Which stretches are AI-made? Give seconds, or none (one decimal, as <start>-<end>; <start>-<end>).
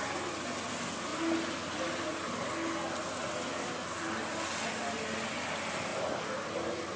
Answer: none